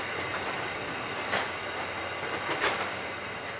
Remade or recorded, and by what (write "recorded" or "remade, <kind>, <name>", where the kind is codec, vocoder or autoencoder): recorded